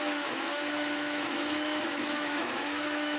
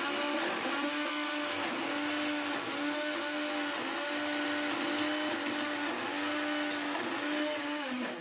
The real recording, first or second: second